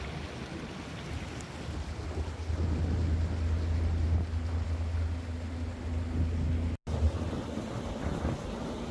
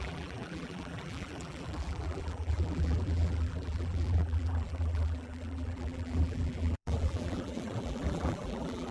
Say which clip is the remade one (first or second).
second